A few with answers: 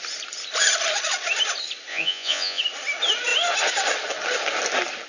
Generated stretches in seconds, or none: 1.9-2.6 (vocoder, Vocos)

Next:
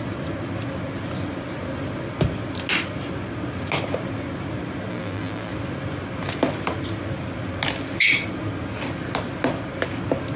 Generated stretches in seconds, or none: 4.9-5.5 (vocoder, BigVGAN v2)

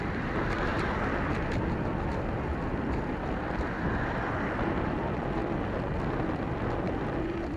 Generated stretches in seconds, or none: none

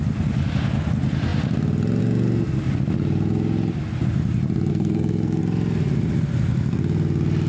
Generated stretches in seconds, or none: 4.7-5.4 (codec, SNAC)